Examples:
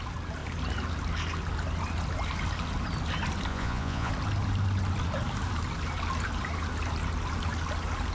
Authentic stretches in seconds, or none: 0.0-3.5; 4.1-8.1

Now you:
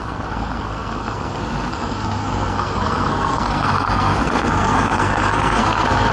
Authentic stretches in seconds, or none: none

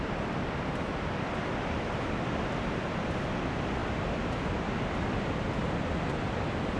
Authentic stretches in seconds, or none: 0.0-6.8

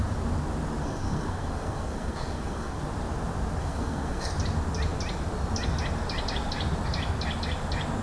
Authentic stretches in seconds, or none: 0.0-0.8; 2.8-3.6; 4.3-8.0